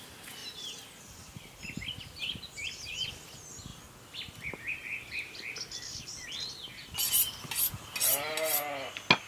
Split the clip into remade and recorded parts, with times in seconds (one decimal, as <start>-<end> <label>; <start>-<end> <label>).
0.0-0.4 recorded; 0.4-3.1 remade; 3.1-9.3 recorded